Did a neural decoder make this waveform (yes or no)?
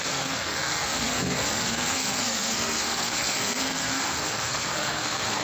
yes